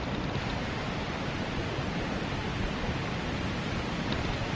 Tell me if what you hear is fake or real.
real